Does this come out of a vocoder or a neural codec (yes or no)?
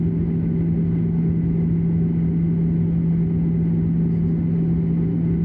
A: no